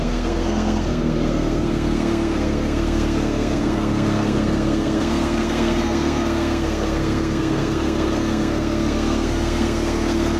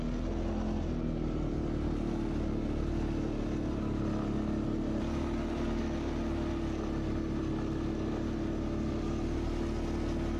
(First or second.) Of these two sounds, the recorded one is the second